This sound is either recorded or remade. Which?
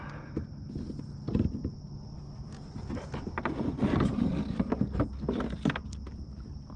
recorded